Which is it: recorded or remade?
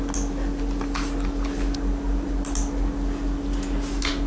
recorded